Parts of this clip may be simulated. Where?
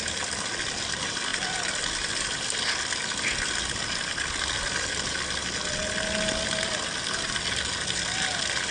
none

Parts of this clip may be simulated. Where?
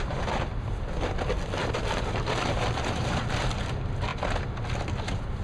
1.6-3.4 (vocoder, BigVGAN v2)